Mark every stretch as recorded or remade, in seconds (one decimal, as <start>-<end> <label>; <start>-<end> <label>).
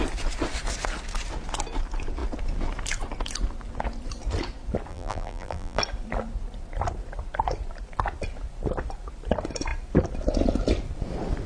0.0-4.9 recorded; 4.9-5.8 remade; 5.8-11.5 recorded